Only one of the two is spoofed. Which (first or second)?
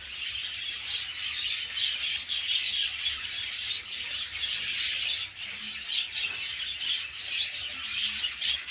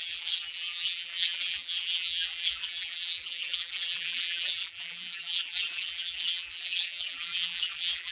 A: second